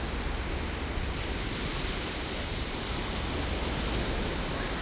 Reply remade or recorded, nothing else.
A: recorded